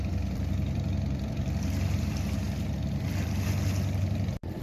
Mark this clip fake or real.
fake